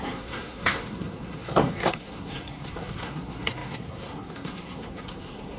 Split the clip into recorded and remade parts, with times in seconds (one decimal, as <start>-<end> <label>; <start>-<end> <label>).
0.0-5.6 remade